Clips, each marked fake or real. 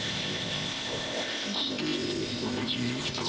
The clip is fake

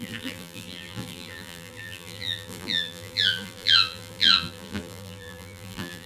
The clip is fake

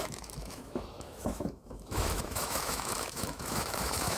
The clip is fake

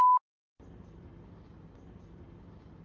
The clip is real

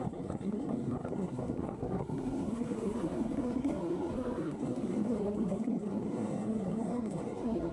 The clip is fake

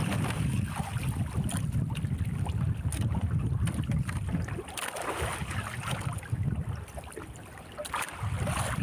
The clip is real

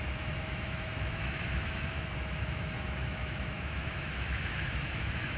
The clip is fake